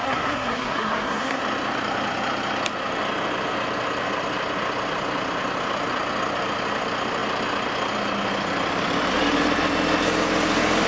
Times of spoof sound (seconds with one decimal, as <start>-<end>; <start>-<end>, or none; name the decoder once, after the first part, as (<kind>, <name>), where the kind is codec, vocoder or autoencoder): 0.0-1.4 (codec, SNAC)

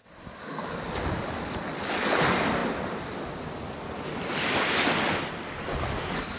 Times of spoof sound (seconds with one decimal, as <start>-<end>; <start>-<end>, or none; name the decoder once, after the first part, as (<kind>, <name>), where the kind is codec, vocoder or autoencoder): none